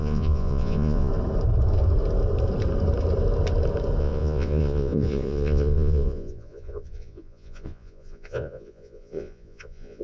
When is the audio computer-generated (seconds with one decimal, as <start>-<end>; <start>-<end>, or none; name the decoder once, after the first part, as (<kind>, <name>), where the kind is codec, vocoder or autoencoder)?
0.0-1.1 (vocoder, Vocos); 4.0-10.0